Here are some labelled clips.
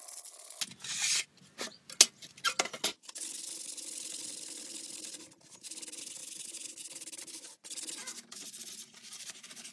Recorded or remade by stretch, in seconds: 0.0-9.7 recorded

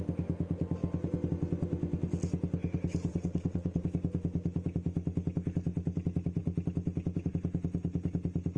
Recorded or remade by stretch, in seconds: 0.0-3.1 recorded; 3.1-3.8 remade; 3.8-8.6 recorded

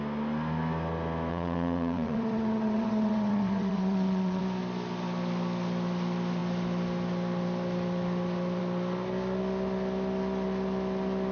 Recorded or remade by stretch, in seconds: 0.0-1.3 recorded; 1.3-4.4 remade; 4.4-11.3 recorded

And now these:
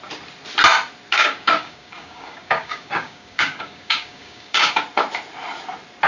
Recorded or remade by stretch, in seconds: 0.0-1.1 recorded; 1.1-4.8 remade; 4.8-6.1 recorded